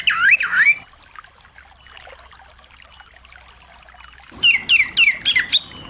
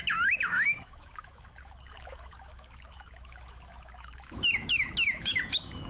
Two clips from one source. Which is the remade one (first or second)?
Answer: second